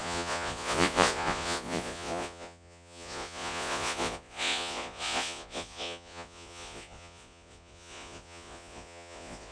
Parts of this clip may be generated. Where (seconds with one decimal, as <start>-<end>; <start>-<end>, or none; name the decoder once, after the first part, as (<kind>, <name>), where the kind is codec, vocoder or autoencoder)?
0.0-9.5 (vocoder, Vocos)